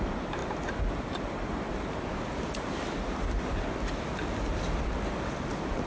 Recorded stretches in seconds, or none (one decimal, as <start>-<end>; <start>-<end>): 0.0-5.9